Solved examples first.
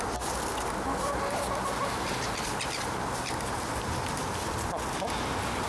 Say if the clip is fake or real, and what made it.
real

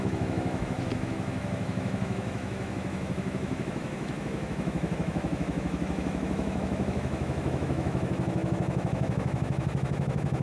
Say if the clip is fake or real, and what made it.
fake, autoencoder, DAC-VAE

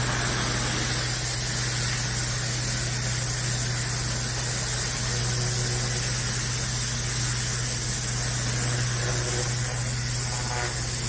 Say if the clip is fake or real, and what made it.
real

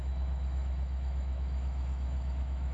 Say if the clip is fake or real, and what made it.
fake, autoencoder, DAC-VAE